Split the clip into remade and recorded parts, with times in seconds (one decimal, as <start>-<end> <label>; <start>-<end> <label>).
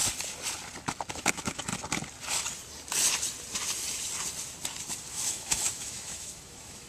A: 0.0-1.1 recorded; 1.1-1.7 remade; 1.7-5.1 recorded; 5.1-6.9 remade